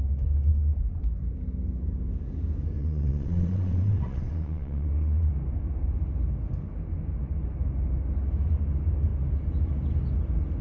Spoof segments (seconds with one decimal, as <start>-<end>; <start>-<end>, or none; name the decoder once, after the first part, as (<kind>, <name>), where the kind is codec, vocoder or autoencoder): 2.8-5.3 (vocoder, WaveNeXt)